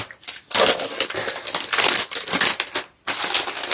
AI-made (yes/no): no